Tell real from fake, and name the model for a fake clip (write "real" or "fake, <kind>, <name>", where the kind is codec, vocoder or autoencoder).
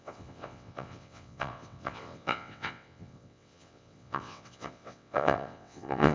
fake, vocoder, WaveNeXt